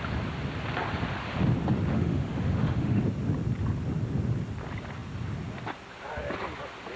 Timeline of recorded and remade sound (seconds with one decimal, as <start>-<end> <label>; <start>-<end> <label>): 0.0-1.9 recorded; 1.9-3.0 remade; 3.0-7.0 recorded